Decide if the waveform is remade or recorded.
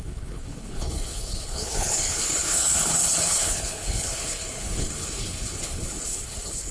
remade